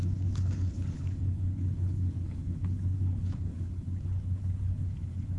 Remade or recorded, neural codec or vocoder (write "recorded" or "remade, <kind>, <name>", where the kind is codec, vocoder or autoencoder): remade, codec, HILCodec